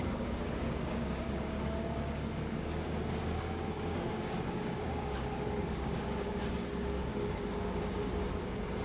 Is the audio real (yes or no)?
no